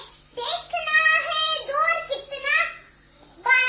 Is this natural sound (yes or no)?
yes